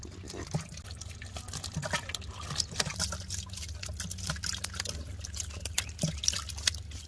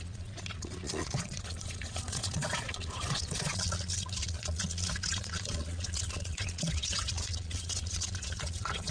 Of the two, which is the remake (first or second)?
second